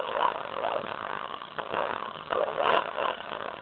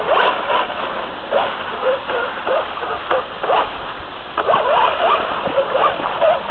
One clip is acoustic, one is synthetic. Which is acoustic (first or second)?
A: second